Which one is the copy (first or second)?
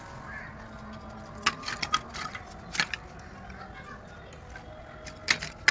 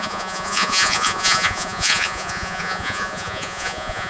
second